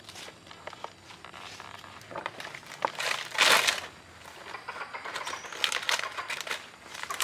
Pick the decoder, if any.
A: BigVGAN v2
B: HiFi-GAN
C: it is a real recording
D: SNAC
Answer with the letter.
C